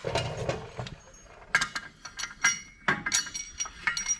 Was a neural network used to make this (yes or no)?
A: no